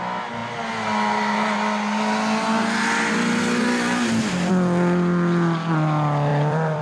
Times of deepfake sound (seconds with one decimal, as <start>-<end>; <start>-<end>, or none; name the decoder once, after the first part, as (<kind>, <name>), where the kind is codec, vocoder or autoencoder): 6.3-6.8 (vocoder, BigVGAN v2)